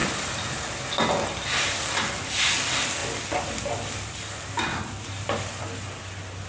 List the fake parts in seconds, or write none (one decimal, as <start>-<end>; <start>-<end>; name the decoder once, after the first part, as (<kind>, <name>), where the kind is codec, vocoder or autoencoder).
none